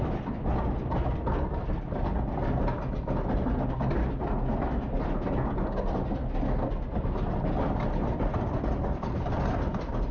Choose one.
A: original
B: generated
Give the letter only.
A